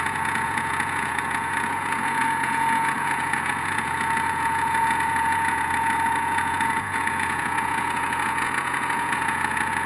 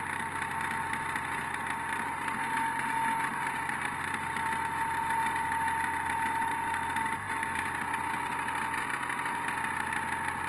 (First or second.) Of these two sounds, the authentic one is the second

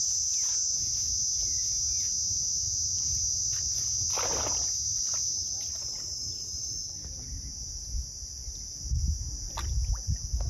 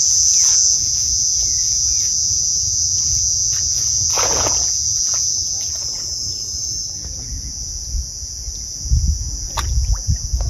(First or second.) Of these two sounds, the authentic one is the first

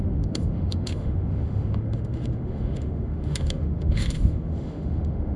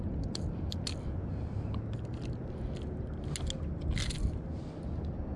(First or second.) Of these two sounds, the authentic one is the second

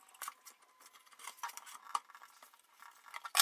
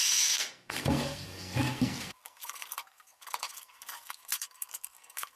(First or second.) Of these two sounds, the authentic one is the first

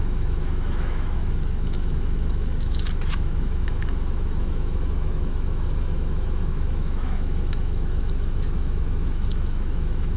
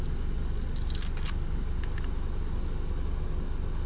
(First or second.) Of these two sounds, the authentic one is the second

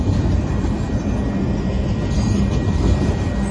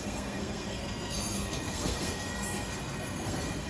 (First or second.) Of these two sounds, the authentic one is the first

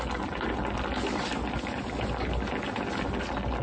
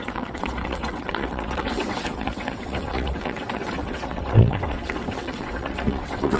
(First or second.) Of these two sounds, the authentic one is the first